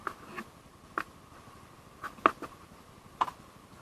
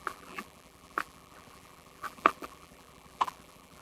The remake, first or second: second